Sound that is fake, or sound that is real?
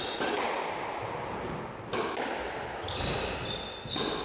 real